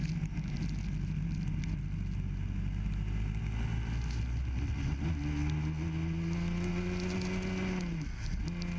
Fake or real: real